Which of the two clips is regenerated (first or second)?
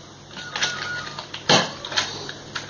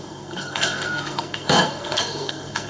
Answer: second